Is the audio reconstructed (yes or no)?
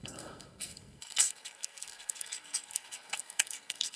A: yes